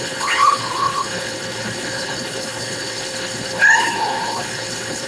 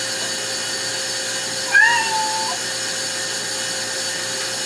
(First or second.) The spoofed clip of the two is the first